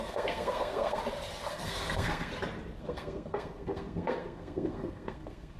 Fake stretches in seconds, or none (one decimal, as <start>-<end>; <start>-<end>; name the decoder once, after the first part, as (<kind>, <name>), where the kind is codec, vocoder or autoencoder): 0.0-1.0 (codec, SNAC); 1.5-2.3; 2.8-5.6